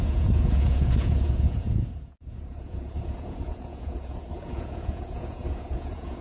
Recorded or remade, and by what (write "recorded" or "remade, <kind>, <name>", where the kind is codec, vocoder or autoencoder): remade, vocoder, Vocos